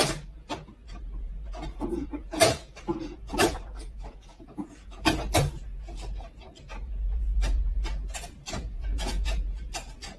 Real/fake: fake